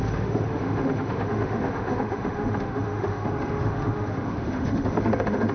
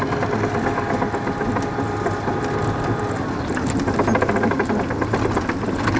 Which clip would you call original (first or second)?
second